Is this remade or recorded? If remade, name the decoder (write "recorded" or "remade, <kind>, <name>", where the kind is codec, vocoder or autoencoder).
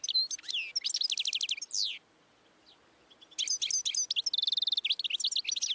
recorded